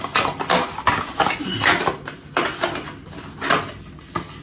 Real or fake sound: real